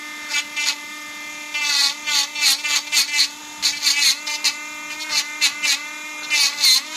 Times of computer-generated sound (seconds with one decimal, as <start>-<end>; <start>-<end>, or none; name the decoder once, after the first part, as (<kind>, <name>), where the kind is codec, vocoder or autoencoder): none